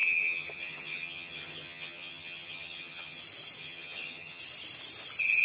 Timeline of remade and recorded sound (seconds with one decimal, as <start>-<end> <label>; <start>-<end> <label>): 0.0-3.2 remade; 3.2-3.6 recorded; 3.6-4.4 remade; 4.4-5.4 recorded